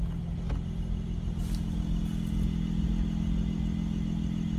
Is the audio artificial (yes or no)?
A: no